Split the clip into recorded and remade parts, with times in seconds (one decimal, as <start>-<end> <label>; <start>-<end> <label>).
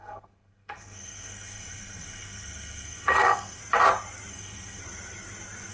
0.0-3.6 remade; 3.6-4.3 recorded; 4.3-4.8 remade; 4.8-5.7 recorded